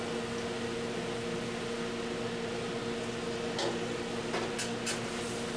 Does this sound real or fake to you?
real